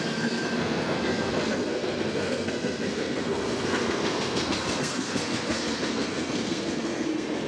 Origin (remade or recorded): remade